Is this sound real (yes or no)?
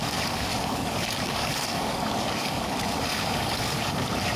no